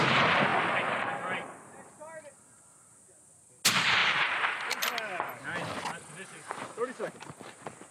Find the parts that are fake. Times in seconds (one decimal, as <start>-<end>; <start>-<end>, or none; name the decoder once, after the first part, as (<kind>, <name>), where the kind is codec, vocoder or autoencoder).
none